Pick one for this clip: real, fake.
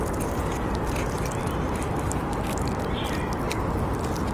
real